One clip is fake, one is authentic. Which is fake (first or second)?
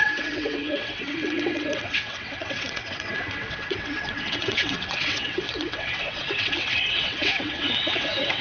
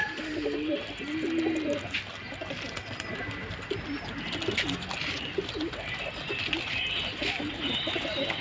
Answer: first